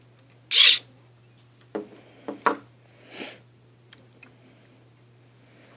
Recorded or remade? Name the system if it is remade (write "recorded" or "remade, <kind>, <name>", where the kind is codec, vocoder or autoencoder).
recorded